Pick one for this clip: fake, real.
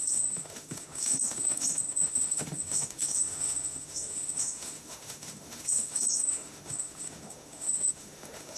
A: fake